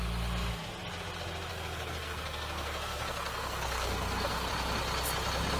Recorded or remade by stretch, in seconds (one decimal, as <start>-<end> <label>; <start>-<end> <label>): 0.0-1.5 recorded; 1.5-4.5 remade; 4.5-5.6 recorded